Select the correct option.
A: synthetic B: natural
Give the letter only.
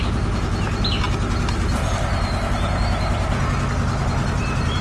B